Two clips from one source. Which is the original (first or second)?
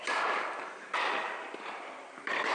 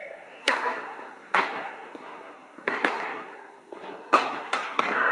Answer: first